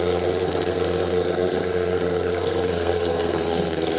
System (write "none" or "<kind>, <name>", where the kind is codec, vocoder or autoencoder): codec, SNAC